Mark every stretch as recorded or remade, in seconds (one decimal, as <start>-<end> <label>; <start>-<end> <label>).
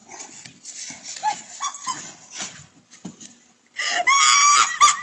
0.0-5.0 recorded